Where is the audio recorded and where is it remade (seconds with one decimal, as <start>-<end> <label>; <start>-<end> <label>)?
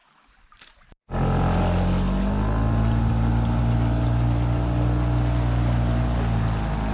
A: 0.0-6.9 recorded